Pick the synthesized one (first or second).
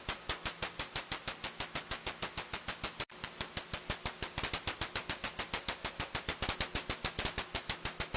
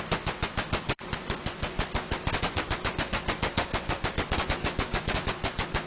second